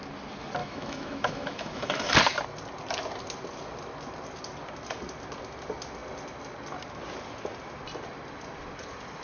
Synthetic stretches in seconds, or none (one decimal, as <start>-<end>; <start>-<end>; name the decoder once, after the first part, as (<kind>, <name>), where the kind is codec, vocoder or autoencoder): 0.6-2.1 (autoencoder, DAC-VAE)